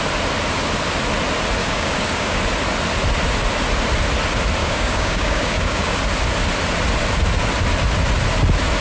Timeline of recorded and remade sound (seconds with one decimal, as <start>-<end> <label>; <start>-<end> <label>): 0.0-1.6 recorded; 1.6-2.4 remade; 2.4-4.6 recorded; 4.6-5.9 remade; 5.9-8.8 recorded